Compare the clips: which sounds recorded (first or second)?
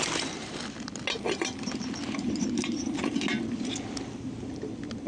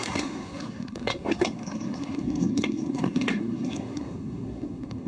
first